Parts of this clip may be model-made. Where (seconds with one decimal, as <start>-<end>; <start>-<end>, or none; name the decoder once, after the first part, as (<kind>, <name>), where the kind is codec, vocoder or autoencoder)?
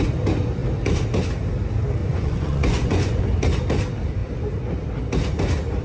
2.0-3.2 (vocoder, Vocos)